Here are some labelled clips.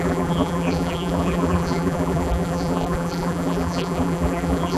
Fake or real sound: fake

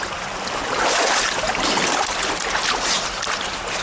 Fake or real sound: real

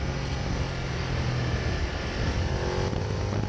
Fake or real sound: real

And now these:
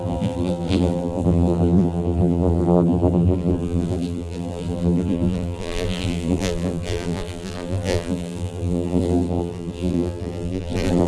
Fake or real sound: fake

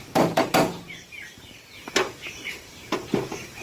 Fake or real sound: fake